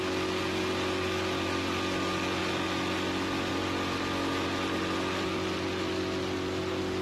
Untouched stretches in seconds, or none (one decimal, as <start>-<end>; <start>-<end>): 0.0-7.0